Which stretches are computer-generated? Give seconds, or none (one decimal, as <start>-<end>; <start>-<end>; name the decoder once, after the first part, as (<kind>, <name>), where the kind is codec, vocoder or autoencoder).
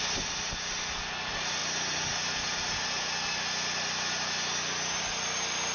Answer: none